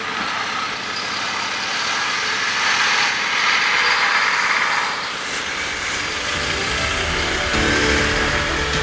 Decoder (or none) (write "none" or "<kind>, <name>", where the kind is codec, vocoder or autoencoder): none